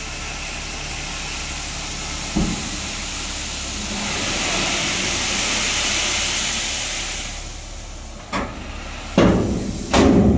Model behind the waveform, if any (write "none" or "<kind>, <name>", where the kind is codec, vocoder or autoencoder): none